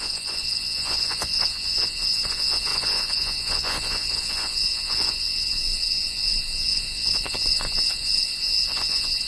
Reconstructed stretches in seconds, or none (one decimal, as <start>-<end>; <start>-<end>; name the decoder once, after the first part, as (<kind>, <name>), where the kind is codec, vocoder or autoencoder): 0.0-9.3 (vocoder, Vocos)